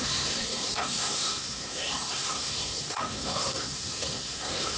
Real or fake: fake